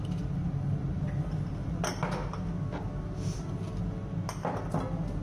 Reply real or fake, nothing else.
real